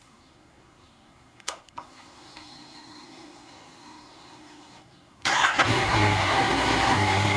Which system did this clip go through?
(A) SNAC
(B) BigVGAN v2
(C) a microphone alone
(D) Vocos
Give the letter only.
A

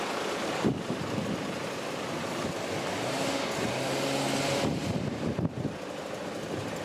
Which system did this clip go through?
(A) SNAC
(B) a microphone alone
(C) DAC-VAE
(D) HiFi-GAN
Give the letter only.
B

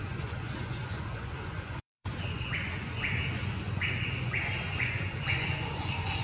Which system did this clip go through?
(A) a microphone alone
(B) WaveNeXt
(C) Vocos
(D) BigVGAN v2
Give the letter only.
C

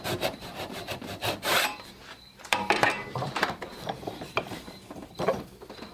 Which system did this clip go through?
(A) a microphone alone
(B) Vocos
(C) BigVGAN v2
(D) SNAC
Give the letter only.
C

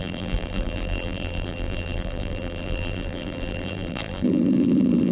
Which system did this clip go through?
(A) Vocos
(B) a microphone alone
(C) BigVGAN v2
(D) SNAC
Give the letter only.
C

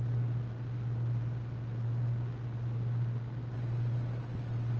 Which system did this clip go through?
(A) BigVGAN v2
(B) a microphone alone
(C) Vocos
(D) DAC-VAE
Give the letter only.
B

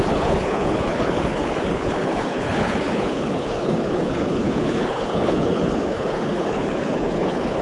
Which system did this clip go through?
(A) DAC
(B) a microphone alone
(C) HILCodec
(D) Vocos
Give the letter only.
C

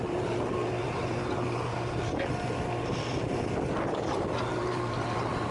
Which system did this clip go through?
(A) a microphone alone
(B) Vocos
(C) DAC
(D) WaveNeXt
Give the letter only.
A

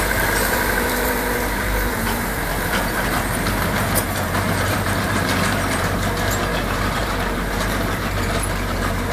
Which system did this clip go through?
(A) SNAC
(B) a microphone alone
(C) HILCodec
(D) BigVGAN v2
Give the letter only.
D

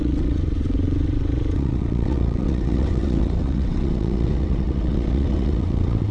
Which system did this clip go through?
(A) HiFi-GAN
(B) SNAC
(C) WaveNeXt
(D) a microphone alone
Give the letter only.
C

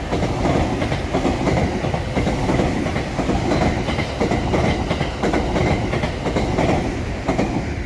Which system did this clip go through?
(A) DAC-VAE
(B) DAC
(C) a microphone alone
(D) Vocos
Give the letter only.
C